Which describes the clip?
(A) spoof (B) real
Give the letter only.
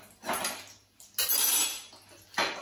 B